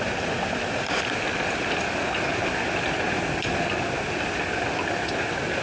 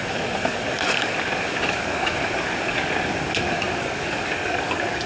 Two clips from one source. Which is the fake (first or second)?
second